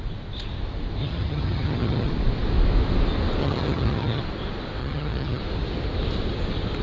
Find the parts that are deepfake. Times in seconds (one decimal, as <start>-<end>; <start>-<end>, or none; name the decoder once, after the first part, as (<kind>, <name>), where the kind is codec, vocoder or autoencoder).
1.0-2.1 (vocoder, HiFi-GAN); 3.4-4.2; 4.8-5.4